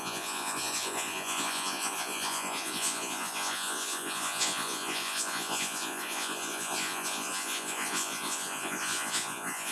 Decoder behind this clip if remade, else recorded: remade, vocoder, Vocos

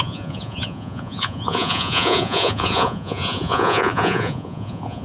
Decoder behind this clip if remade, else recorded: remade, vocoder, Vocos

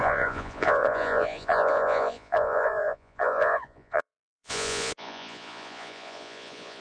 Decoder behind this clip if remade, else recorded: remade, vocoder, Vocos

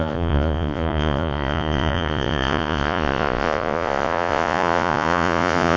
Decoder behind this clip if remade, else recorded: remade, vocoder, Vocos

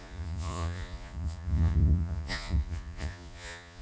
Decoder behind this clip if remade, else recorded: remade, vocoder, Vocos